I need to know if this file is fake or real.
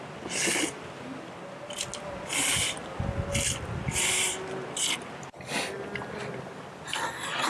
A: real